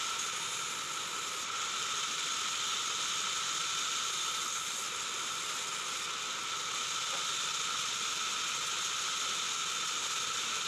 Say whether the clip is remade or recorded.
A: recorded